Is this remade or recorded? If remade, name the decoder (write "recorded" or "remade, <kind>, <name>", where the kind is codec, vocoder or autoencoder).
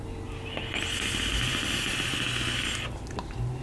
recorded